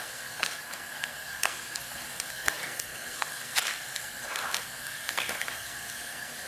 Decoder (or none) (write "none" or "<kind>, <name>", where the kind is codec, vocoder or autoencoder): codec, SNAC